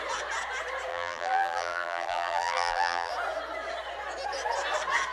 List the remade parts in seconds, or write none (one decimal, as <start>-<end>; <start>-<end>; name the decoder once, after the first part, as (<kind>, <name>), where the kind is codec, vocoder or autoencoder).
0.9-3.1 (vocoder, BigVGAN v2)